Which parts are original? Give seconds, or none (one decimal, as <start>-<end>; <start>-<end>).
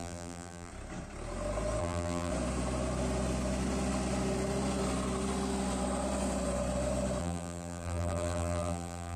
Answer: 0.7-1.8; 2.3-7.2